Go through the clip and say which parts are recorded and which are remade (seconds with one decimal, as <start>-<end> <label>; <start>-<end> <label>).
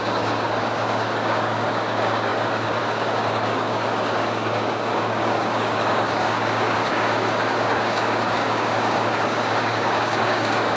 0.0-10.8 remade